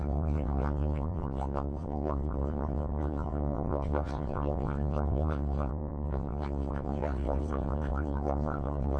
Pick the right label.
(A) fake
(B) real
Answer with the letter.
A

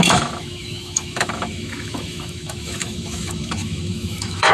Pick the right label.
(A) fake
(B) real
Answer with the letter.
A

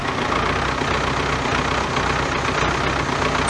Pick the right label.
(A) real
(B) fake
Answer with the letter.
A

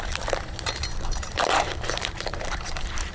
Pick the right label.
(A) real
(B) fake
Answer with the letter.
B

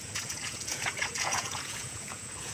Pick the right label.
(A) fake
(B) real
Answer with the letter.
A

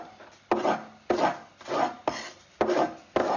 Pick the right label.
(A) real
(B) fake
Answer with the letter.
A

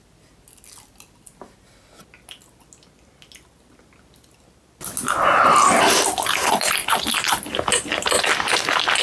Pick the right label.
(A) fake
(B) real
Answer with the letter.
B